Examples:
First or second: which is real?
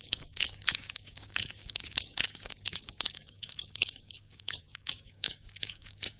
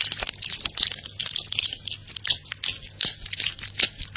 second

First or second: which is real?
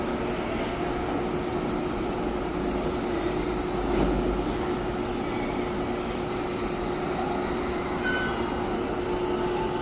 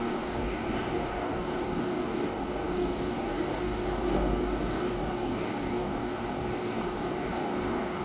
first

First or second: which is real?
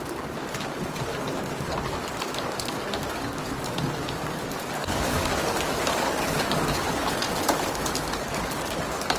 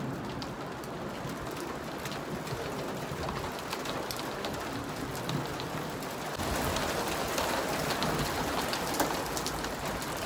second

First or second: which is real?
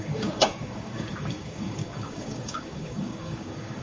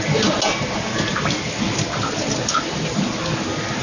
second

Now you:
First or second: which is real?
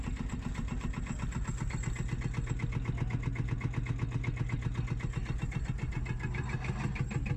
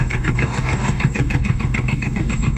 first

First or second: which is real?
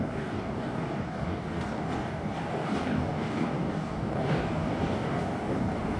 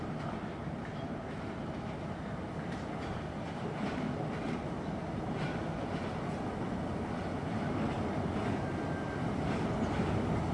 second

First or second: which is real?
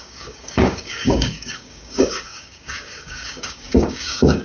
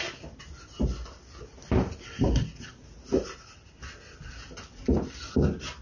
second